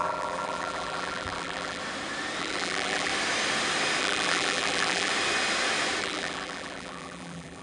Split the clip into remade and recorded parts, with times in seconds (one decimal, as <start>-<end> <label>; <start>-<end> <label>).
0.0-1.8 remade; 1.8-2.4 recorded; 2.4-3.1 remade; 3.1-4.0 recorded; 4.0-5.1 remade; 5.1-6.0 recorded; 6.0-7.6 remade